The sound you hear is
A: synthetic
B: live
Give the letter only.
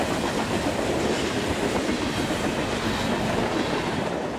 B